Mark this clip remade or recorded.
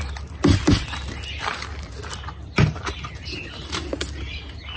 recorded